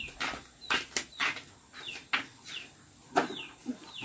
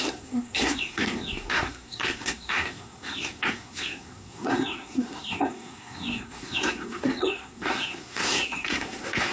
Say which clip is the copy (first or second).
second